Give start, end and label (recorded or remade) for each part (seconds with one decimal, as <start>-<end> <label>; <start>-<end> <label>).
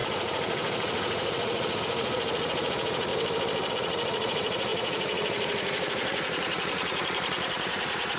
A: 0.0-3.1 remade; 3.1-3.7 recorded; 3.7-8.2 remade